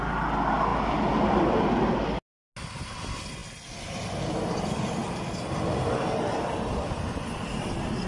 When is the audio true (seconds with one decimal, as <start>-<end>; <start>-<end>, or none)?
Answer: 0.0-8.1